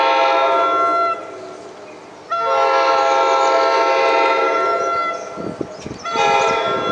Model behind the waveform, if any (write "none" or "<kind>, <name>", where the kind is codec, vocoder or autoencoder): none